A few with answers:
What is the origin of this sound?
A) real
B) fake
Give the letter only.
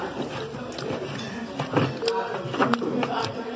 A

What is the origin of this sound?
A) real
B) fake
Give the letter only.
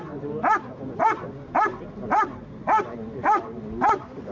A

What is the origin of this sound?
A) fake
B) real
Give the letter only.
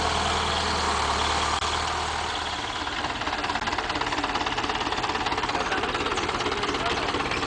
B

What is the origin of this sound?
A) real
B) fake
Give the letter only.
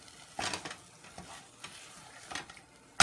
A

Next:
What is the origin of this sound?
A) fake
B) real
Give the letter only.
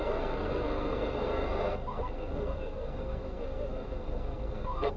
A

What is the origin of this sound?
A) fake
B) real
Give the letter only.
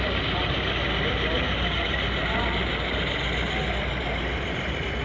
B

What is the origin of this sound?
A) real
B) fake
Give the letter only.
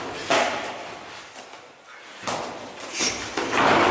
A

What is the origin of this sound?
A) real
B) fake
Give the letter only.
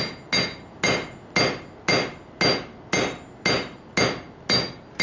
A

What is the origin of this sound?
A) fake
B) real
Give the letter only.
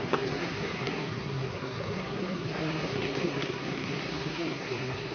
A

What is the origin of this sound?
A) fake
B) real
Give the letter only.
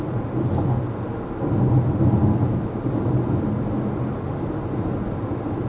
B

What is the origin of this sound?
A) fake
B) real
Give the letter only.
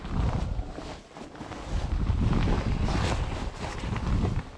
B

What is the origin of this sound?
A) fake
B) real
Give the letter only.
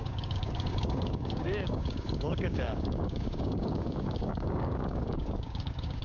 A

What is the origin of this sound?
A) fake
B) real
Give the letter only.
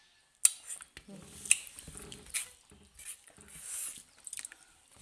B